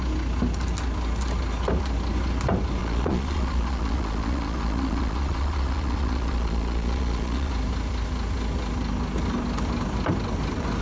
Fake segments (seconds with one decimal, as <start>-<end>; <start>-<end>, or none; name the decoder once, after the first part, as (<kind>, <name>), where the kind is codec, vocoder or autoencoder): 2.8-7.5 (vocoder, Vocos)

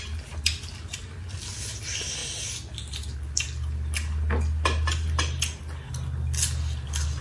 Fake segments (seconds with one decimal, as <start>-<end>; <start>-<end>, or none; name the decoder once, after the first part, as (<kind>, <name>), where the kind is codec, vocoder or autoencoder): none

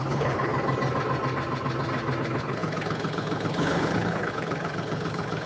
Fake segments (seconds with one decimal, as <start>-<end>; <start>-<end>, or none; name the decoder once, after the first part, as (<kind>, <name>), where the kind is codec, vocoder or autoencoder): 0.0-0.5 (codec, HILCodec); 2.2-5.5

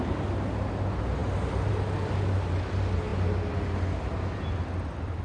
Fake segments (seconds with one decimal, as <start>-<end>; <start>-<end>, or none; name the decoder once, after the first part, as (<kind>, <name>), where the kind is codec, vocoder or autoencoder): none

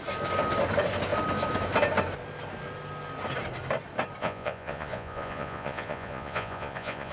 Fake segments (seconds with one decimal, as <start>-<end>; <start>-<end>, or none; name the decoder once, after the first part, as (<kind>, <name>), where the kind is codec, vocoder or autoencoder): 4.2-7.1 (vocoder, Vocos)